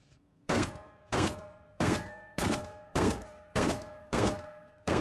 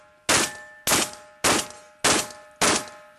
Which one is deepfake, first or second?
first